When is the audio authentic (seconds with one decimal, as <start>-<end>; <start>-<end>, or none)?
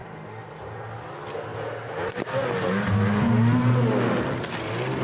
0.0-5.0